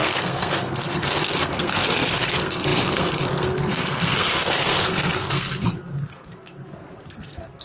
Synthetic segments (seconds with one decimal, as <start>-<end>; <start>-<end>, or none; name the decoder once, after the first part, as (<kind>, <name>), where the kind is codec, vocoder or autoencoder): 0.0-7.6 (codec, SNAC)